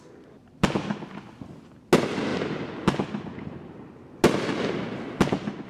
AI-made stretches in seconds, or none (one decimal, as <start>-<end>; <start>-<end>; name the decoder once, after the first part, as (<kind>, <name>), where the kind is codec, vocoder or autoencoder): none